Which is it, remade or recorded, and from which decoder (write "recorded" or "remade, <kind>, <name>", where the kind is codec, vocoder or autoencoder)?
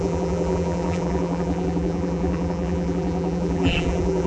remade, vocoder, BigVGAN v2